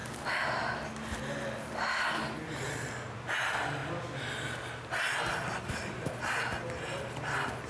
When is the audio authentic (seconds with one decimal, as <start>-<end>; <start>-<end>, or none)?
0.0-7.7

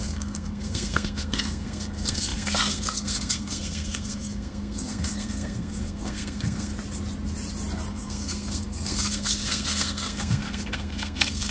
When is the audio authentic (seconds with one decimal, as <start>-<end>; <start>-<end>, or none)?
6.7-7.9